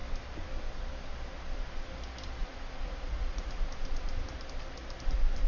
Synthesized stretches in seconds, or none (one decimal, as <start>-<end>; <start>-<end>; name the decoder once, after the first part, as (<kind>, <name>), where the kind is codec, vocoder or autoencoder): 2.4-3.7 (vocoder, Vocos)